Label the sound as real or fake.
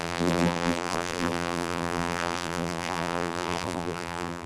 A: fake